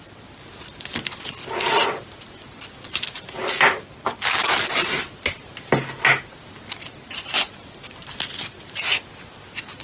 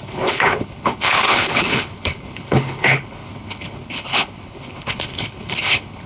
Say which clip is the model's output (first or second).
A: second